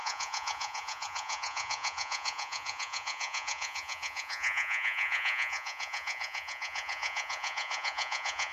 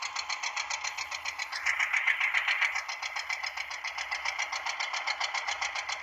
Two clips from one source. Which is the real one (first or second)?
second